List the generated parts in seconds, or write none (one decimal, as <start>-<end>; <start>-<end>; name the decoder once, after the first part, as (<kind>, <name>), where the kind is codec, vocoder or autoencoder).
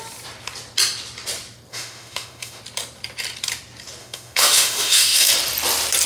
1.7-2.6 (autoencoder, DAC-VAE); 4.0-5.3